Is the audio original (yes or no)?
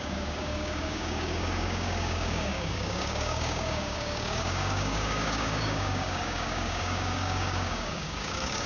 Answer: no